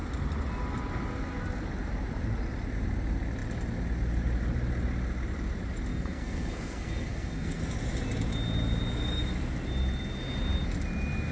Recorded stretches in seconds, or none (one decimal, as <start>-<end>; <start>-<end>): 0.0-5.9; 7.6-11.3